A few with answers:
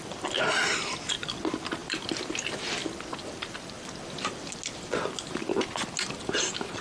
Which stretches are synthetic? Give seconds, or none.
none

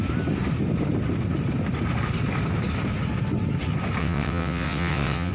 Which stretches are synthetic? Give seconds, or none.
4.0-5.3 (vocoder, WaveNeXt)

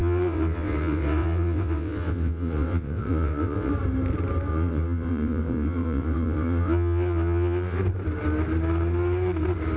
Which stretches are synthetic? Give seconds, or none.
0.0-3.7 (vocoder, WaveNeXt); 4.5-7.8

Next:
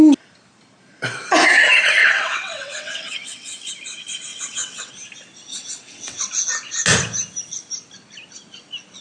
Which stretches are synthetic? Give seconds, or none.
2.0-3.7 (vocoder, WaveNeXt); 4.3-4.9; 5.5-6.3

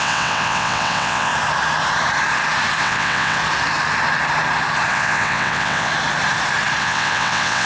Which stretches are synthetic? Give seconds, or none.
0.0-1.3 (vocoder, WaveNeXt); 2.8-3.4; 4.9-5.9; 6.8-7.7

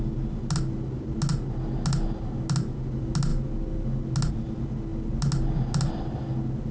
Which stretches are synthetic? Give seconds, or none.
none